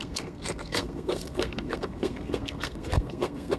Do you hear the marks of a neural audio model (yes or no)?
yes